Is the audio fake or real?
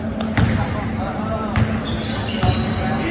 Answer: real